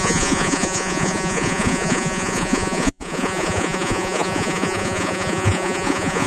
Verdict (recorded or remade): remade